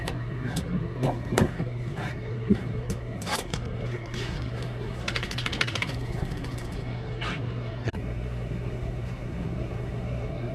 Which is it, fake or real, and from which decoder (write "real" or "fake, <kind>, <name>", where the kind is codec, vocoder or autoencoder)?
fake, codec, SNAC